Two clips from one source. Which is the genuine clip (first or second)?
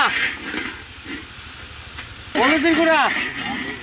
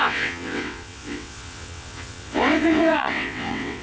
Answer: first